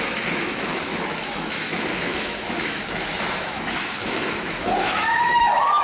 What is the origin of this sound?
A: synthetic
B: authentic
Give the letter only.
A